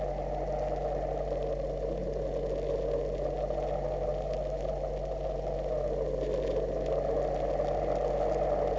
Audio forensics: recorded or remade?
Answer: recorded